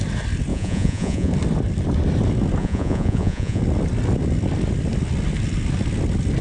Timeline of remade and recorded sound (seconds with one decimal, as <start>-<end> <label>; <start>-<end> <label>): 0.0-0.5 recorded; 0.5-1.3 remade; 1.3-2.6 recorded; 2.6-3.6 remade; 3.6-6.4 recorded